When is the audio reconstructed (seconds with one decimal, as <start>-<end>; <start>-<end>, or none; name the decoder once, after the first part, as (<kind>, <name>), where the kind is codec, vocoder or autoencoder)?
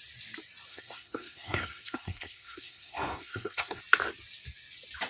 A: 0.7-3.8 (codec, SNAC)